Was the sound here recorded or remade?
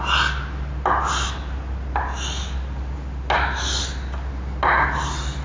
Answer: recorded